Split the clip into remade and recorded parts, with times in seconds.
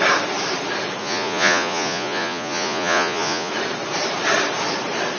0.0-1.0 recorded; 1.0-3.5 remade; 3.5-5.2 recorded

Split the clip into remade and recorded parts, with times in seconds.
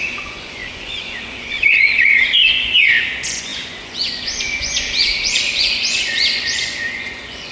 0.0-7.5 remade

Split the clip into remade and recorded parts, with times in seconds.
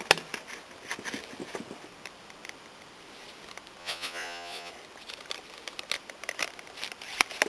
0.0-3.8 recorded; 3.8-4.7 remade; 4.7-7.5 recorded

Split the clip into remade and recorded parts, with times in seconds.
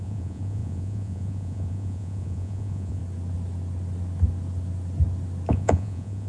0.0-3.0 remade; 3.0-5.5 recorded; 5.5-6.3 remade